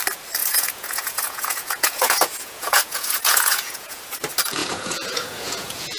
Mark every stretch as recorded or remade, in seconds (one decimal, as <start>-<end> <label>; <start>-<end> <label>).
0.0-0.4 recorded; 0.4-4.0 remade; 4.0-4.6 recorded; 4.6-6.0 remade